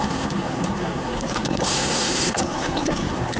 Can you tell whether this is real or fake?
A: fake